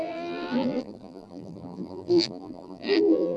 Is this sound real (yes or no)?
no